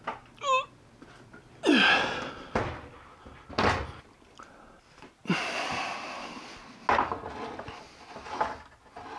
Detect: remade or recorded recorded